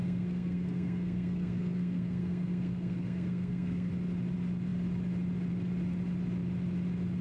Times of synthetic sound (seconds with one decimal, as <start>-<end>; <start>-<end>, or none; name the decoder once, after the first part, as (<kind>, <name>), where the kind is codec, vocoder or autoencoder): 0.0-3.9 (codec, SNAC)